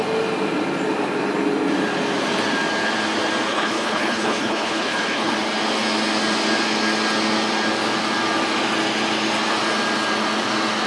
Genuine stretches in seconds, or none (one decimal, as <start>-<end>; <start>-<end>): 0.0-3.5; 5.3-10.9